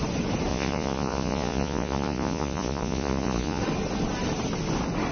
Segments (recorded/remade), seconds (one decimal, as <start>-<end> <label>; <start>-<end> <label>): 0.0-0.5 recorded; 0.5-3.6 remade; 3.6-5.1 recorded